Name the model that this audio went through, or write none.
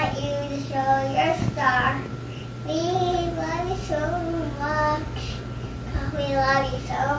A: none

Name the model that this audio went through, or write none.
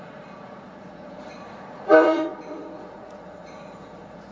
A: vocoder, Vocos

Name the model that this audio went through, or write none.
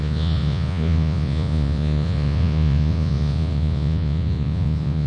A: vocoder, Vocos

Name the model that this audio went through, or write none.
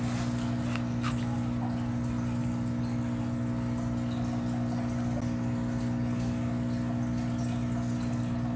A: none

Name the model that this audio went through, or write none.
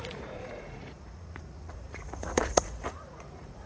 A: vocoder, Vocos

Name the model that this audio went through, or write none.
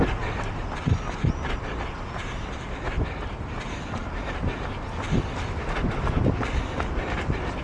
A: none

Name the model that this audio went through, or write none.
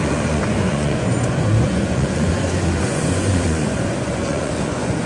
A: vocoder, Vocos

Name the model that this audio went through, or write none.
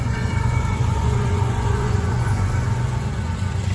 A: vocoder, Vocos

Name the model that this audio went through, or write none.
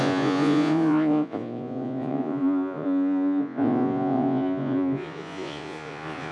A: vocoder, Vocos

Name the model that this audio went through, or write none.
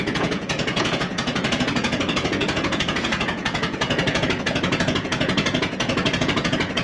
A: vocoder, Vocos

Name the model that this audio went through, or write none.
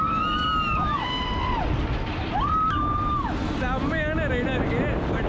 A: none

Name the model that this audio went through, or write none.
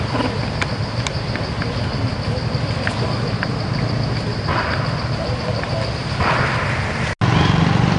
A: none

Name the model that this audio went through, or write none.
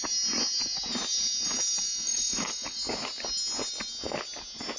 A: none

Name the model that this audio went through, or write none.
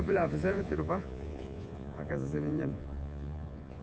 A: vocoder, Vocos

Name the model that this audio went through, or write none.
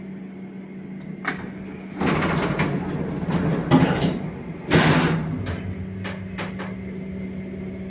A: none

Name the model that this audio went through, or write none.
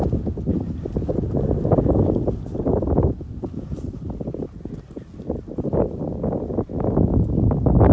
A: none